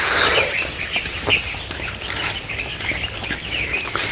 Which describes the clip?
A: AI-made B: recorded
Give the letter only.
B